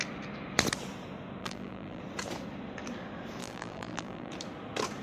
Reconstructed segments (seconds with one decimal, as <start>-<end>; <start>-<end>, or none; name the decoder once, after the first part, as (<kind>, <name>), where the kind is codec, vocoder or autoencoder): 1.4-2.0 (vocoder, BigVGAN v2); 3.4-4.3